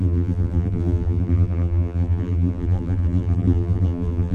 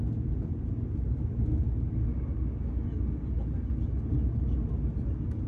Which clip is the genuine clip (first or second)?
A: second